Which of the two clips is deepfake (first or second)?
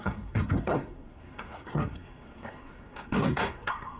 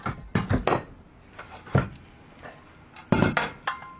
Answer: first